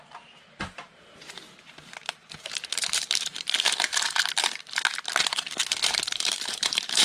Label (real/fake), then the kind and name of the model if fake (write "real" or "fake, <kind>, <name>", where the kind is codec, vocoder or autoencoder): fake, vocoder, BigVGAN v2